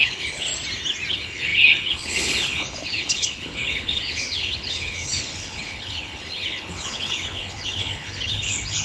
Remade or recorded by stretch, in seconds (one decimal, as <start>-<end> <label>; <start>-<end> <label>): 0.0-0.5 remade; 0.5-1.1 recorded; 1.1-8.8 remade